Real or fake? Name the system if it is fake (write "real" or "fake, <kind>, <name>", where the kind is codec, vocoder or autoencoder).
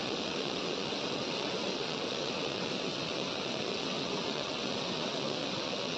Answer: fake, vocoder, WaveNeXt